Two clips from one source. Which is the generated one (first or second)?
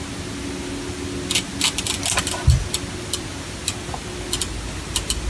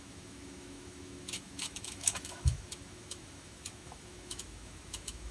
second